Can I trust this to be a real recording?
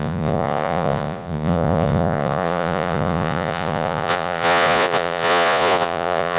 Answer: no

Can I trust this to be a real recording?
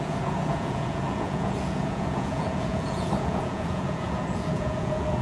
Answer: no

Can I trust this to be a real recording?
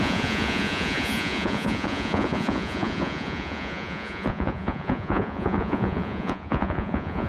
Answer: no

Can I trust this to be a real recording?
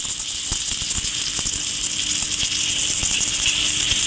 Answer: yes